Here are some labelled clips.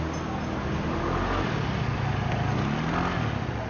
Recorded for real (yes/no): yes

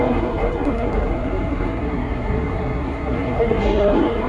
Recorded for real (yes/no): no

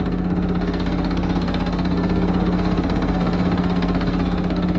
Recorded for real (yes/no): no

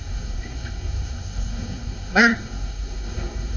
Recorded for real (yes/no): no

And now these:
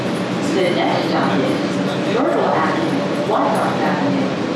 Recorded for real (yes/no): yes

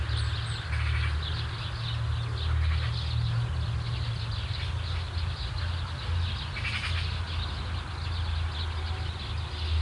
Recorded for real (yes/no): yes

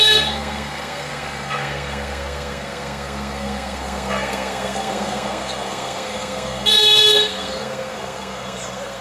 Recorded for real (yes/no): no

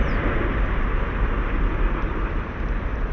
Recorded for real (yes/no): yes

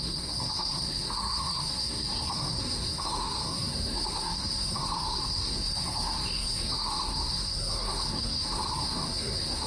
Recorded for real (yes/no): no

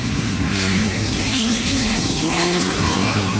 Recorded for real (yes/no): no